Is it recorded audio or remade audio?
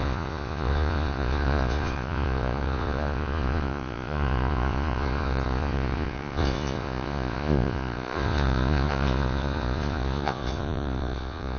remade